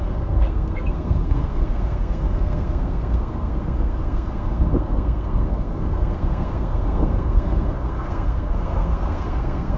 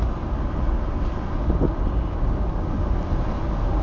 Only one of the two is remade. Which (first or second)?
first